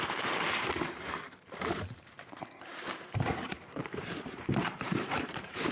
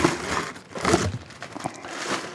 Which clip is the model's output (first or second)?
first